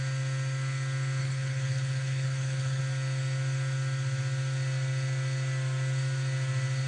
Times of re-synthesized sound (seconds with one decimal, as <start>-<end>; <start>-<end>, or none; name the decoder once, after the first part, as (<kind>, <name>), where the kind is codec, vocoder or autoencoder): 1.2-2.8 (codec, HILCodec)

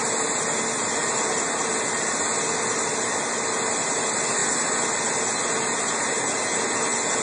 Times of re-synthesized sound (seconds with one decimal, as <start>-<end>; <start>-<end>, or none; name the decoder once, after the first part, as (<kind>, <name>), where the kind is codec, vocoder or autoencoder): none

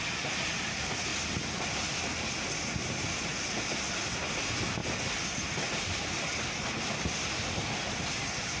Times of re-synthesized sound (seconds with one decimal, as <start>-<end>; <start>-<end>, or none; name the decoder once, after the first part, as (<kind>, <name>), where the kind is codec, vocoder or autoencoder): none

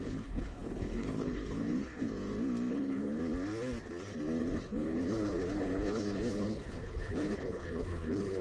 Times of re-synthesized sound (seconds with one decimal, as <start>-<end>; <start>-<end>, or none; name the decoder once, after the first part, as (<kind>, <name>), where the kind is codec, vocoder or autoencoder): 0.0-2.1 (codec, HILCodec); 2.7-3.2; 4.4-8.4

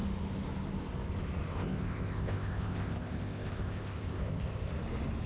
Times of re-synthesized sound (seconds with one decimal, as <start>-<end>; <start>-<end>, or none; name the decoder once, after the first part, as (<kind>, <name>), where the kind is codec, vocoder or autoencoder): 1.5-4.7 (codec, ZipCodec)

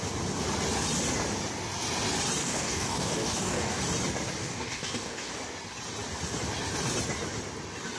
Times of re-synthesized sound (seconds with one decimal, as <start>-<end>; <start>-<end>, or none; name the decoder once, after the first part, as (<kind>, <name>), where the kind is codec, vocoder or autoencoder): 2.4-3.8 (codec, DAC); 4.4-5.3

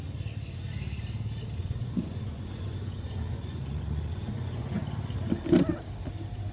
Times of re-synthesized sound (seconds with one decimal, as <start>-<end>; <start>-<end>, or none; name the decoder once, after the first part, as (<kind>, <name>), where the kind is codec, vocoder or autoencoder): 1.6-4.8 (vocoder, Vocos)